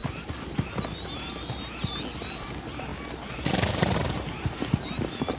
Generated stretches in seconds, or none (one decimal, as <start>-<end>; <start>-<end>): none